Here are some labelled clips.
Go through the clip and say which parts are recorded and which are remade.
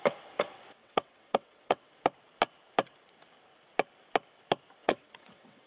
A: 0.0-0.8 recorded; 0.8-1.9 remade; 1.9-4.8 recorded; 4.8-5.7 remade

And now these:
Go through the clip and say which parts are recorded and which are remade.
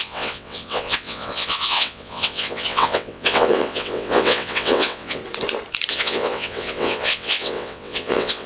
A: 0.0-5.2 remade; 5.2-5.9 recorded; 5.9-8.5 remade